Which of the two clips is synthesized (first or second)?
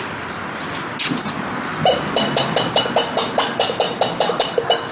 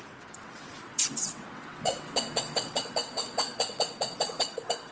second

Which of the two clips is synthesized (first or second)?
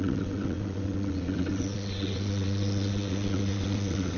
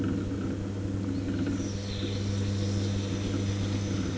first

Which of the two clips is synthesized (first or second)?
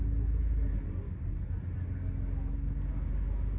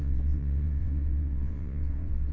second